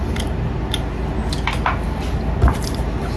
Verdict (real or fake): real